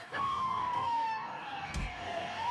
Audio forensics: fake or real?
fake